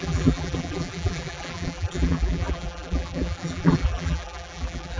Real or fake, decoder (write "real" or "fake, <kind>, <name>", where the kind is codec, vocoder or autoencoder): fake, vocoder, BigVGAN v2